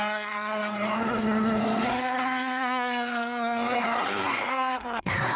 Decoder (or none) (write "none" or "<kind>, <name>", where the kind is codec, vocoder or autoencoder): codec, SNAC